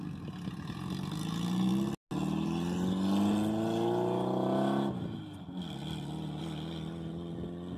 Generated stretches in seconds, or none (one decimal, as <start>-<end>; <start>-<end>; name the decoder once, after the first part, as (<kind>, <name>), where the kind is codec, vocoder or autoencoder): none